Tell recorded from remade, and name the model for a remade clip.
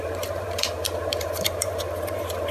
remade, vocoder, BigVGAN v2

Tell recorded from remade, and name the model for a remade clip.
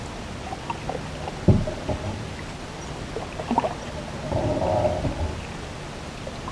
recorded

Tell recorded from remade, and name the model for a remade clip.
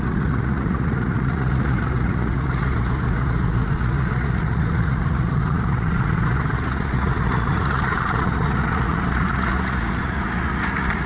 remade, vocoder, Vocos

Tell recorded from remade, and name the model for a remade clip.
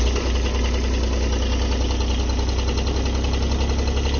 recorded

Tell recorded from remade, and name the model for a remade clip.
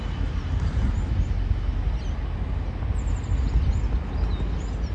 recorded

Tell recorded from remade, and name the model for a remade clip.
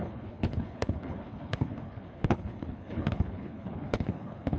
remade, codec, HILCodec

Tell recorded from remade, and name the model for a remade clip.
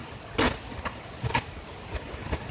recorded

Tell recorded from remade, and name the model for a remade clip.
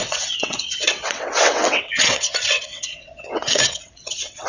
remade, vocoder, WaveNeXt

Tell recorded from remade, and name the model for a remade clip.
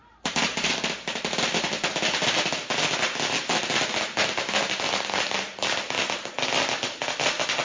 recorded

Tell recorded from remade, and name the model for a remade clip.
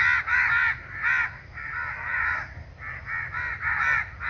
recorded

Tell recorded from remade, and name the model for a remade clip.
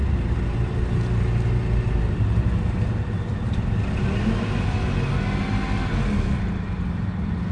recorded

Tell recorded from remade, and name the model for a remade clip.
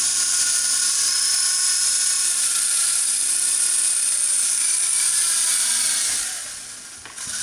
recorded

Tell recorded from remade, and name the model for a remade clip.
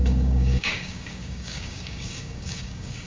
remade, codec, DAC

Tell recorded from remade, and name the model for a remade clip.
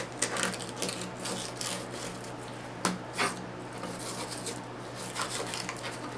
recorded